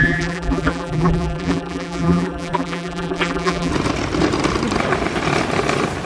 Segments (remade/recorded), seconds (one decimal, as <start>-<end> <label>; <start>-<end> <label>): 0.0-3.7 remade; 3.7-6.1 recorded